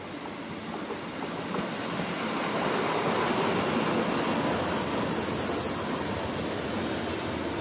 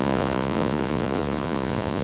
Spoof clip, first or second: second